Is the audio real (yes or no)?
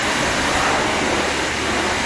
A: yes